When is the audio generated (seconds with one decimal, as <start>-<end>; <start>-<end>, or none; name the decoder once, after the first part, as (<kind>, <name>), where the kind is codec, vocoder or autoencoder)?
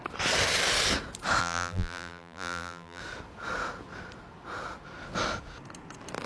1.4-3.0 (vocoder, BigVGAN v2)